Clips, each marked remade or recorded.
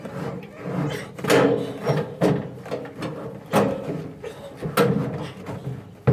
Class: recorded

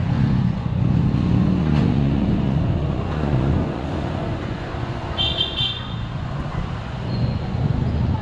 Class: remade